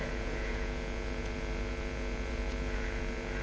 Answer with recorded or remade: remade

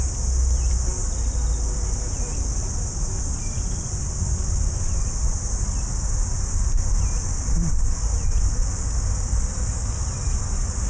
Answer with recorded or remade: recorded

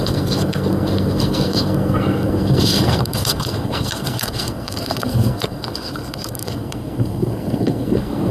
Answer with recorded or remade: remade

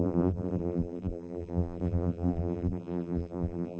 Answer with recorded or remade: remade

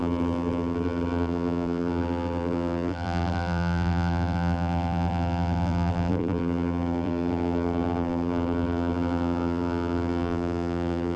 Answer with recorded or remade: remade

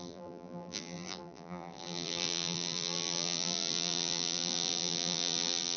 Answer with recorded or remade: remade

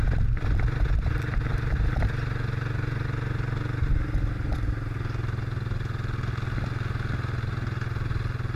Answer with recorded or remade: recorded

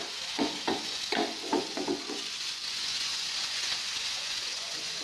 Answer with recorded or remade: remade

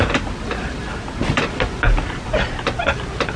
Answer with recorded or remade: recorded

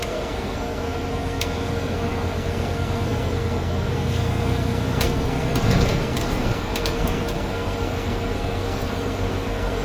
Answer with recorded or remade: remade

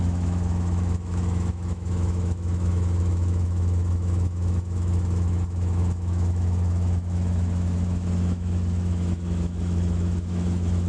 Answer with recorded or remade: remade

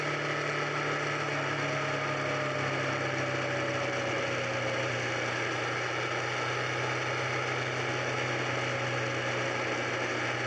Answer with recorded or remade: recorded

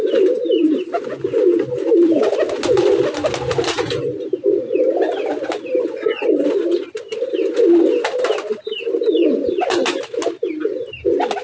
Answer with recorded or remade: recorded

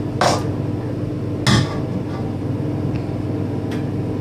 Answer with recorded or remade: recorded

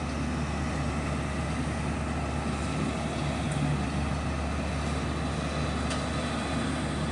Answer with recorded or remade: recorded